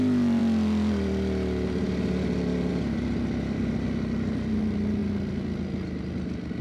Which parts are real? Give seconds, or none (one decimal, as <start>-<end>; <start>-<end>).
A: 0.4-2.7; 5.0-6.6